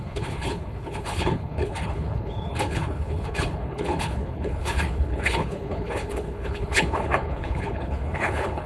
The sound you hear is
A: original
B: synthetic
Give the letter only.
B